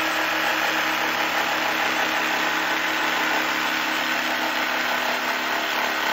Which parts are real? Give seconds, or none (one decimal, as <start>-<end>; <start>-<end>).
0.0-6.1